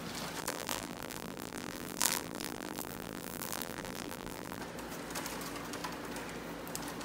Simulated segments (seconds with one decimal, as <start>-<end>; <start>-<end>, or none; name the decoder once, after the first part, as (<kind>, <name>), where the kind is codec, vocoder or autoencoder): 0.4-4.6 (vocoder, BigVGAN v2)